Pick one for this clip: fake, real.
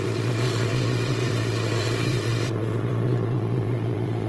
fake